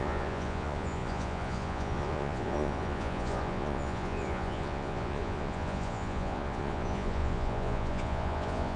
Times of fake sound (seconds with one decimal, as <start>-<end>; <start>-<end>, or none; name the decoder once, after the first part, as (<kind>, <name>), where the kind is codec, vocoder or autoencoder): 0.0-8.8 (vocoder, Vocos)